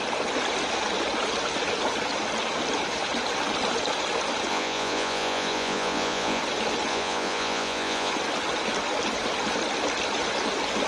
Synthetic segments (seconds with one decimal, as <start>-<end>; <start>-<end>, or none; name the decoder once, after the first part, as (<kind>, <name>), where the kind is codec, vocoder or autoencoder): 4.5-6.4 (vocoder, Vocos); 6.9-8.1